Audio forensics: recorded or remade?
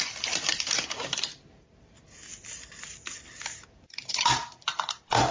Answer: remade